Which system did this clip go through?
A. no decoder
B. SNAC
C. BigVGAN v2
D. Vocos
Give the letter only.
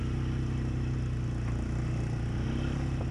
A